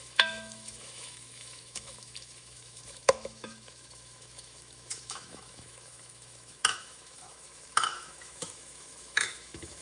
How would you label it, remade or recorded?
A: remade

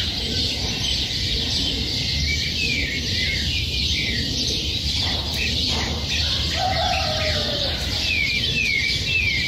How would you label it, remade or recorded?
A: recorded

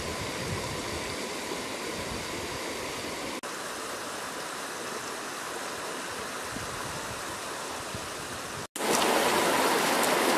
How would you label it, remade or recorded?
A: recorded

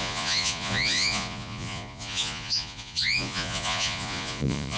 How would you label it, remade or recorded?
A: remade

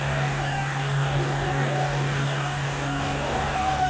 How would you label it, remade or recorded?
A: remade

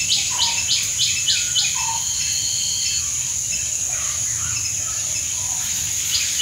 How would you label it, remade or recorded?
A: recorded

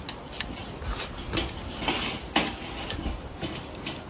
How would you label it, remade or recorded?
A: recorded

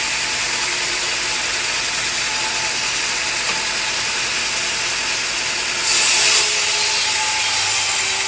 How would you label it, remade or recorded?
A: recorded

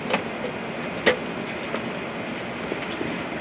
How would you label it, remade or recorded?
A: recorded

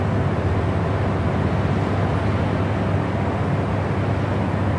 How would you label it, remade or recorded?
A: recorded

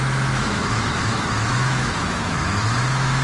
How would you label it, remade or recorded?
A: remade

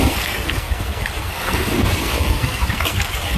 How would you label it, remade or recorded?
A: remade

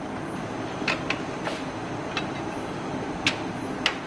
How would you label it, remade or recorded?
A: recorded